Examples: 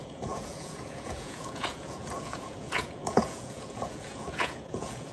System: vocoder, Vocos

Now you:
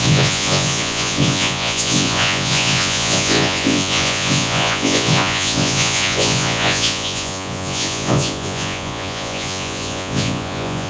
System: vocoder, Vocos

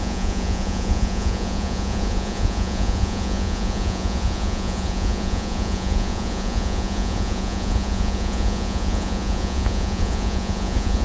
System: vocoder, Vocos